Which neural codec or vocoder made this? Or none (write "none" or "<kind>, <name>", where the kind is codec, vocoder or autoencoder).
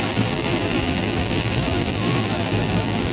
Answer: vocoder, BigVGAN v2